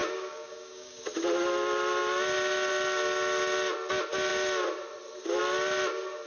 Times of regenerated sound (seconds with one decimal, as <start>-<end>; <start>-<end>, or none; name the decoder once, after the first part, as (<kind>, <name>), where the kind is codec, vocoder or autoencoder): 0.0-1.0 (codec, DAC)